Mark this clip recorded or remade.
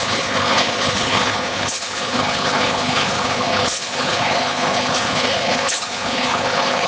remade